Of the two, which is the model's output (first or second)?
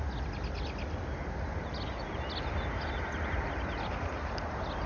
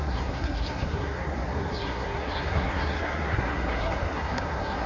second